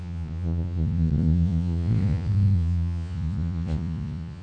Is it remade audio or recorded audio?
remade